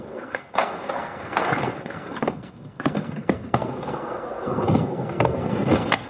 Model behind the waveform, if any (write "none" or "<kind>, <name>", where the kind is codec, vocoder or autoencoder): codec, SNAC